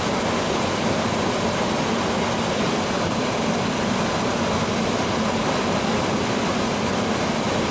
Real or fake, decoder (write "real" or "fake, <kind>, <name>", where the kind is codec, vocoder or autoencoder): real